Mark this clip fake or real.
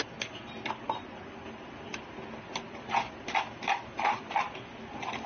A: real